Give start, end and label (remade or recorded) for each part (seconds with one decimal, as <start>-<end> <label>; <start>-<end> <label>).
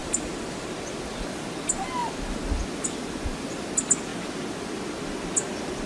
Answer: 0.0-0.7 remade; 0.7-5.9 recorded